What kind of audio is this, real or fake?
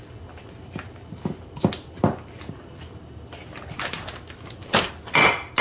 real